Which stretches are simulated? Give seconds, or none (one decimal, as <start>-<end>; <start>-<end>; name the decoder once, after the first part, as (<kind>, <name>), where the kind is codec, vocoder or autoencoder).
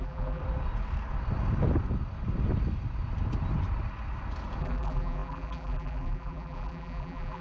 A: 0.0-0.4 (vocoder, BigVGAN v2); 4.6-7.4